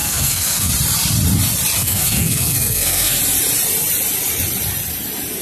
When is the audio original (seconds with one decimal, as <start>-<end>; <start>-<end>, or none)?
0.7-1.8; 3.2-5.4